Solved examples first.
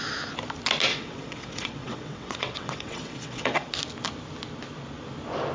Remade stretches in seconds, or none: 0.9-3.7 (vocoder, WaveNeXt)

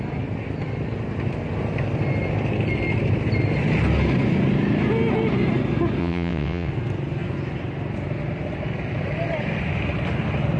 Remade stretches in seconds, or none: 6.0-6.7 (vocoder, WaveNeXt)

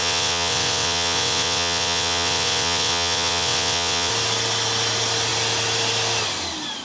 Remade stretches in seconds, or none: 0.0-4.1 (vocoder, WaveNeXt)

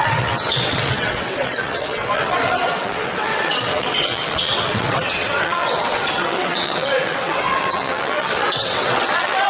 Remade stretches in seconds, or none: 0.0-9.5 (vocoder, WaveNeXt)

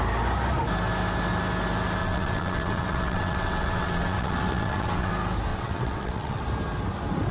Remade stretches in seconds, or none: 2.0-5.1 (vocoder, WaveNeXt); 5.5-6.4

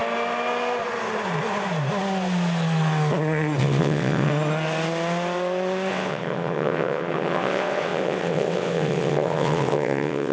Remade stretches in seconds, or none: 3.6-4.3 (vocoder, WaveNeXt); 5.9-10.3

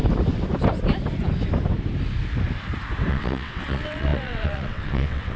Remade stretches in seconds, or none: 3.1-5.4 (vocoder, WaveNeXt)